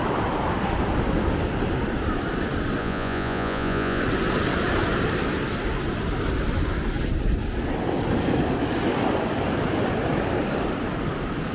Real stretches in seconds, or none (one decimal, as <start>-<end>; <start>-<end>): 0.0-2.8; 4.0-11.5